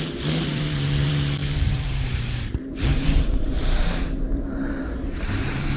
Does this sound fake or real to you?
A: fake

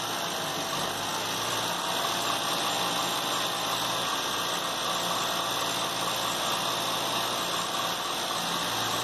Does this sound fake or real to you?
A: real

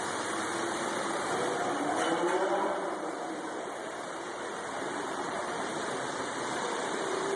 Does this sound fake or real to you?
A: fake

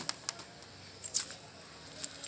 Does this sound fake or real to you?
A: real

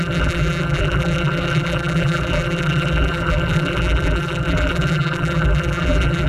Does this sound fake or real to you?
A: fake